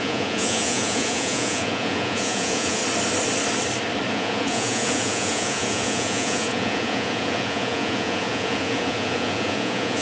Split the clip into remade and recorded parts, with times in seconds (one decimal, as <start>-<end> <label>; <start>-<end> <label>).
0.0-2.8 remade; 2.8-4.1 recorded; 4.1-10.0 remade